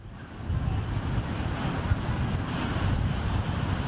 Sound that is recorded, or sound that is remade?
recorded